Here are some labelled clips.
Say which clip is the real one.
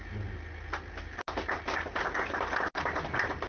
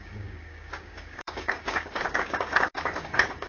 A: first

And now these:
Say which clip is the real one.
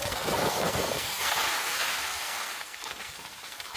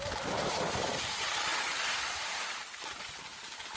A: second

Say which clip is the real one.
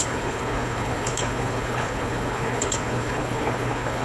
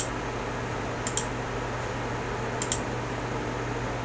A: second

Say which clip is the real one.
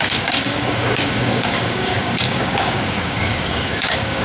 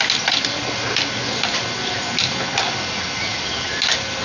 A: second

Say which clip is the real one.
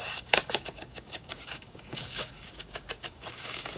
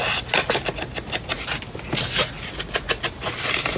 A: second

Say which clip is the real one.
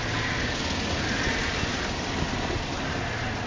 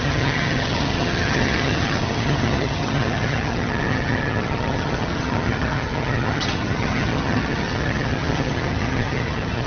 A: first